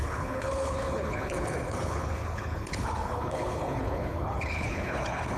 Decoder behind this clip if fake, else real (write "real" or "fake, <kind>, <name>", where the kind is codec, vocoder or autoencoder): fake, codec, HILCodec